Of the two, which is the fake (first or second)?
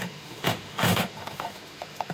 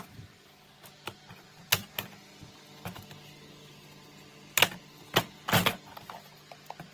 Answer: first